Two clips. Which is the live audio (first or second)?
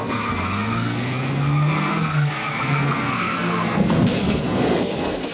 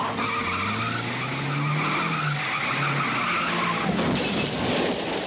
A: second